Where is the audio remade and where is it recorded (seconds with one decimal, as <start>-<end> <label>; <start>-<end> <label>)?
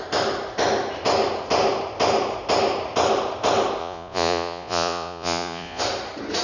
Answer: 0.0-3.8 recorded; 3.8-5.8 remade; 5.8-6.4 recorded